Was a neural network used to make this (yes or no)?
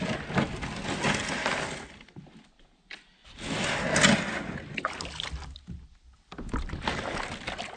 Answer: no